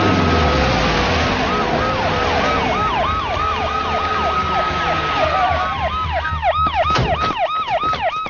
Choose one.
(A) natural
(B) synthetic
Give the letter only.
A